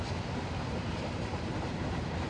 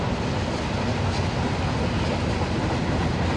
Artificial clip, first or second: first